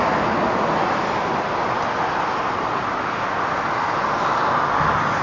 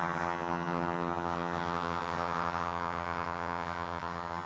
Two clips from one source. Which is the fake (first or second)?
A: second